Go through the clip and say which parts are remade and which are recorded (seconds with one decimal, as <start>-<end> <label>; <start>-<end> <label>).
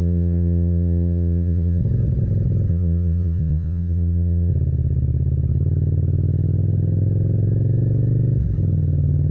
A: 0.0-1.8 remade; 1.8-2.7 recorded; 2.7-4.5 remade; 4.5-9.3 recorded